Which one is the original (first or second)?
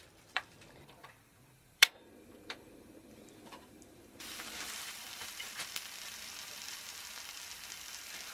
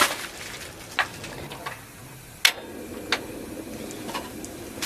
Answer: second